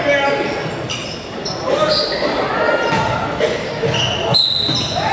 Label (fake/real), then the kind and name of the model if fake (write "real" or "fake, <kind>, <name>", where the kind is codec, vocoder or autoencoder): real